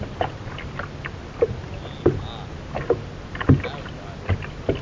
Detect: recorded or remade recorded